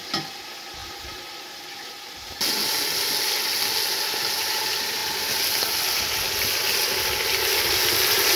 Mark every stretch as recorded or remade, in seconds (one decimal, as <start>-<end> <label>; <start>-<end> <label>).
0.0-8.4 recorded